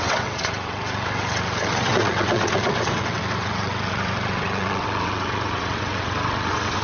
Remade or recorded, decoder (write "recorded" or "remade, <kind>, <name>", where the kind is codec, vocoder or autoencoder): remade, vocoder, WaveNeXt